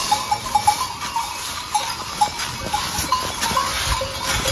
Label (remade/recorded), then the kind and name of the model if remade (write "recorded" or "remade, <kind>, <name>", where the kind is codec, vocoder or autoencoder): recorded